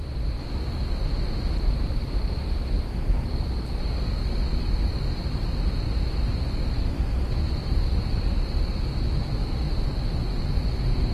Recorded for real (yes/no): yes